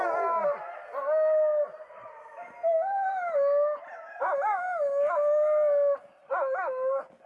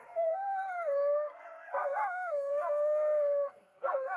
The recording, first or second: first